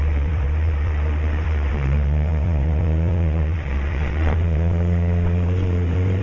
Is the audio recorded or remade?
remade